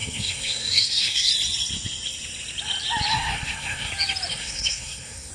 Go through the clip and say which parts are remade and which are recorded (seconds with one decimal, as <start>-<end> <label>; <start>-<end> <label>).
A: 0.0-1.3 remade; 1.3-3.1 recorded; 3.1-3.9 remade; 3.9-4.3 recorded; 4.3-5.3 remade